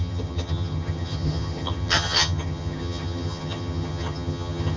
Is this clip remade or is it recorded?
remade